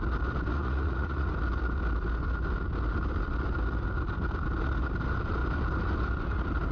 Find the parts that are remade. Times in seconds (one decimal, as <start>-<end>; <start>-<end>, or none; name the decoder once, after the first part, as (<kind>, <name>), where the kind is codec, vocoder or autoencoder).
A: 0.5-1.3 (vocoder, Vocos)